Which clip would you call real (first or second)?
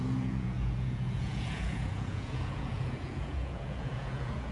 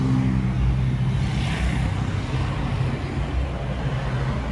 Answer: second